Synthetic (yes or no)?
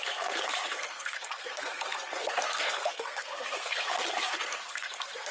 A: yes